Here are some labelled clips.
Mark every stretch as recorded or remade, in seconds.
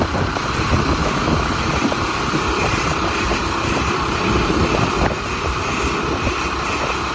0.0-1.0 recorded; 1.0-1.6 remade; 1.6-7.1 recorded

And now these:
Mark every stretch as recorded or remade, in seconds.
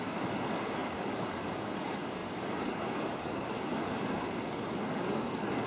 0.0-5.7 remade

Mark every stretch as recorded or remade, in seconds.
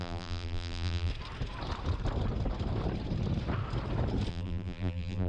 0.0-1.1 remade; 1.1-4.3 recorded; 4.3-5.3 remade